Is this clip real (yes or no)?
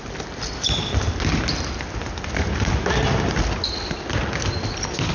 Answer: yes